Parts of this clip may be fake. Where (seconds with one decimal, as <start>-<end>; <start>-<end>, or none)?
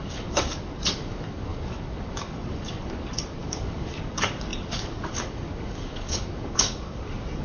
0.0-7.4